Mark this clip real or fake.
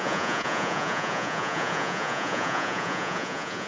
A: fake